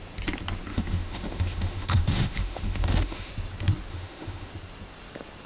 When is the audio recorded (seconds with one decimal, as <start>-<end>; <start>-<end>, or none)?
0.0-0.7; 3.3-3.9; 4.5-5.5